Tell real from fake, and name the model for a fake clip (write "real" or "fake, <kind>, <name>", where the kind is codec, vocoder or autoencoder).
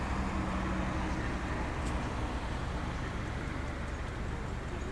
real